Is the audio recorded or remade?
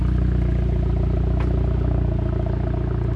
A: recorded